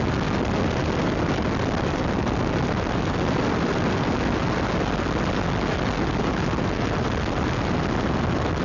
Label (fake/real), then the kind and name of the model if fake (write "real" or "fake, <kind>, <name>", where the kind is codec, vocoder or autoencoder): real